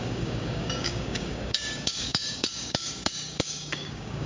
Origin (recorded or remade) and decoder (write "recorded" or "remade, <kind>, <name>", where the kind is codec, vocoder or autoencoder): remade, codec, DAC